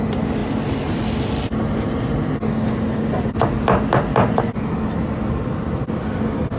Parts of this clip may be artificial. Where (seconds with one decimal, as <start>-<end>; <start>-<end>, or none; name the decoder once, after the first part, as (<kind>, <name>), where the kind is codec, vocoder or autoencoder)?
none